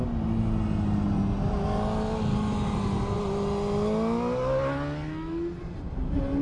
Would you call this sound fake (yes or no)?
no